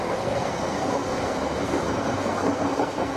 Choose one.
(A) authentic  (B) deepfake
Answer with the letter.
B